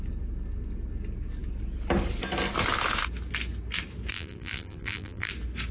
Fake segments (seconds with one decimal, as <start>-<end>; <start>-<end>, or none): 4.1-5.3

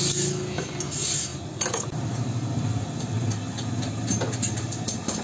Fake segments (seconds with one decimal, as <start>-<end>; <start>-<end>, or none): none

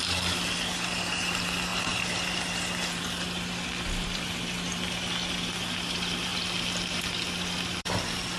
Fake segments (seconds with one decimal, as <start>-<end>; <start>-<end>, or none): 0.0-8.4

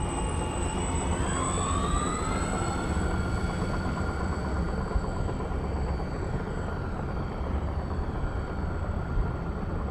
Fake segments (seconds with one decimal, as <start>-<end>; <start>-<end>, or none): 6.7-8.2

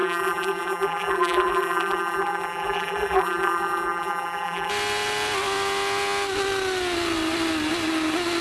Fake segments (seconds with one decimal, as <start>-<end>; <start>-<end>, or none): 0.0-4.7

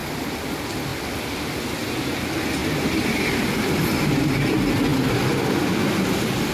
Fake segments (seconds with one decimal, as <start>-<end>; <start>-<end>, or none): 0.0-0.5; 2.6-4.0

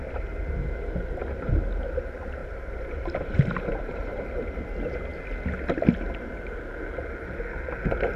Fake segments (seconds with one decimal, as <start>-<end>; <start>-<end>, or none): 2.4-4.2